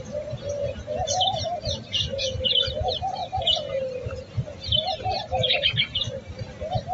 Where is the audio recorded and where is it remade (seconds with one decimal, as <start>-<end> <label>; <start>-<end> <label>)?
0.0-6.9 recorded